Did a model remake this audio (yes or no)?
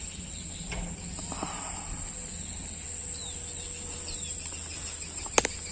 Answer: no